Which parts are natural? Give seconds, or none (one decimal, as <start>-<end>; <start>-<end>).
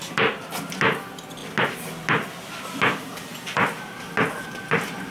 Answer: 0.0-5.1